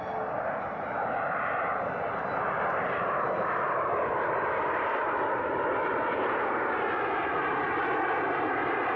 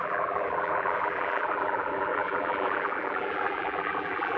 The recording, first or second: first